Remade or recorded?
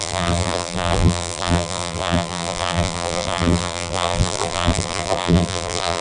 remade